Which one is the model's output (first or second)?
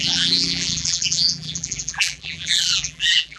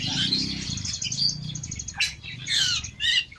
first